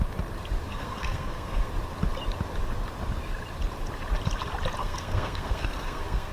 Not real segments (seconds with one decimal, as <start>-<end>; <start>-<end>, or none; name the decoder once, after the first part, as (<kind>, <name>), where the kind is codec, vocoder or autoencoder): 0.7-1.7 (codec, SNAC); 4.8-6.3